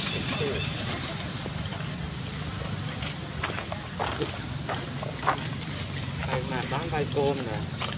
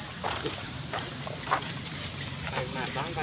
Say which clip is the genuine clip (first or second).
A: first